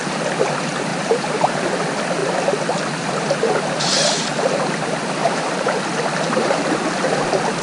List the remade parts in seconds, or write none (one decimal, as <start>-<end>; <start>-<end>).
0.9-1.6; 5.2-5.8